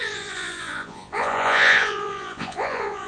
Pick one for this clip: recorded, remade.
remade